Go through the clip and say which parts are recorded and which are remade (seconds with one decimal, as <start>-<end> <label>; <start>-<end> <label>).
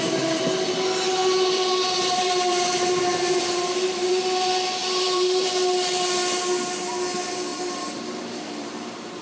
0.0-1.2 recorded; 1.2-3.0 remade; 3.0-3.4 recorded; 3.4-4.1 remade; 4.1-4.8 recorded; 4.8-5.5 remade; 5.5-7.5 recorded; 7.5-9.2 remade